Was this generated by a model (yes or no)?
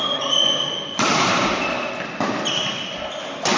no